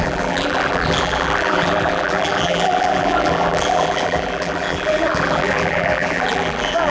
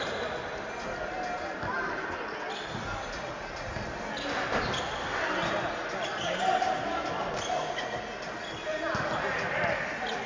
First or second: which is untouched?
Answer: second